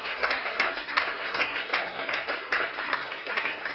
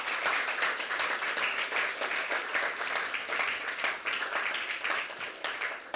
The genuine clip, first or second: second